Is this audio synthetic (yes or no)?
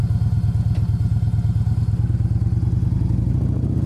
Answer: no